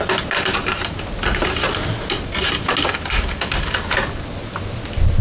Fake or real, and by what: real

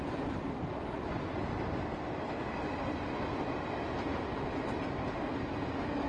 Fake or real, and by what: real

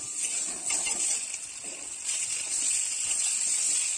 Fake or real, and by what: real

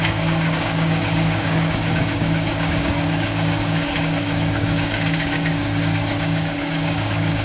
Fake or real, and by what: fake, codec, DAC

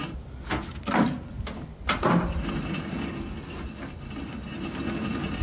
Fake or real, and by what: real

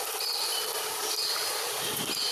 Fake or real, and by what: real